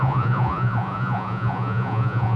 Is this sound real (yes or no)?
no